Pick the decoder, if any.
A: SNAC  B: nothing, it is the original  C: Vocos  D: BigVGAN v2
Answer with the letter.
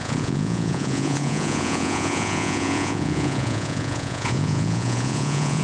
C